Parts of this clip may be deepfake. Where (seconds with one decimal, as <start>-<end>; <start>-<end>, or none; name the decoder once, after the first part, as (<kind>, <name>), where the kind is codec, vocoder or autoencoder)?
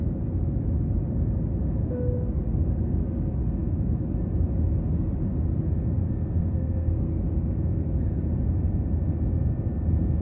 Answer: 1.8-2.4 (codec, SNAC); 6.4-7.2